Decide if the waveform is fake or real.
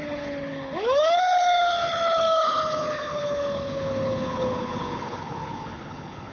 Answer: fake